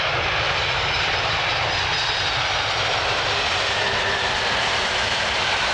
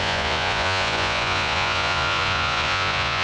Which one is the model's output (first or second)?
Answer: second